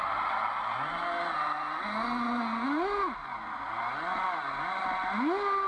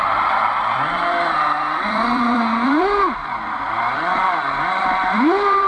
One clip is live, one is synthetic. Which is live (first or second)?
first